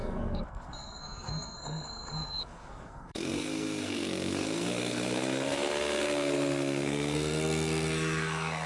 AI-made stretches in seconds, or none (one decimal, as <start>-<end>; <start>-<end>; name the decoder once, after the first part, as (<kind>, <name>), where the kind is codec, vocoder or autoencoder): 0.0-8.7 (codec, SNAC)